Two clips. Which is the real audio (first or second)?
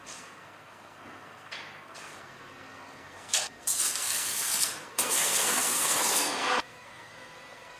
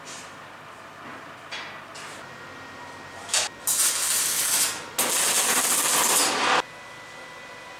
second